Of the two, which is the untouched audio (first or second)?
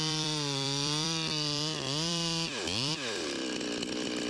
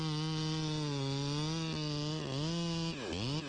second